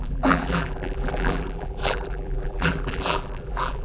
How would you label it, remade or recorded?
remade